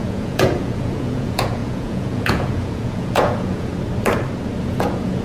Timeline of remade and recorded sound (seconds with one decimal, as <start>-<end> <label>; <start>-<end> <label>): 0.0-3.7 remade; 3.7-4.6 recorded; 4.6-5.2 remade